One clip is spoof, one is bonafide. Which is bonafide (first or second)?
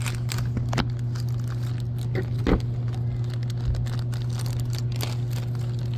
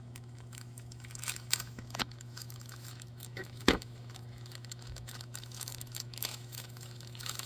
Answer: first